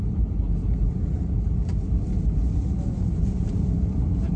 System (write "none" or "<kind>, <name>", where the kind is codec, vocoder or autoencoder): vocoder, BigVGAN v2